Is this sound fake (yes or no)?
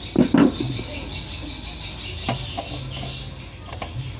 no